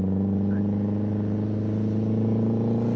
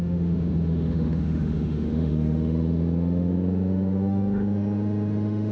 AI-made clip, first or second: second